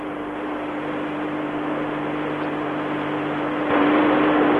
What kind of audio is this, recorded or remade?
recorded